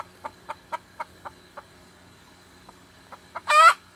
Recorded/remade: remade